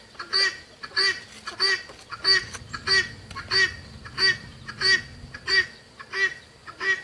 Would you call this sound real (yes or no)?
yes